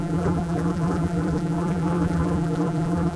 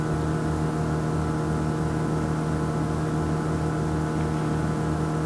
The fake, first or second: first